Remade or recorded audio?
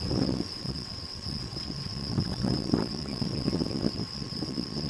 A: remade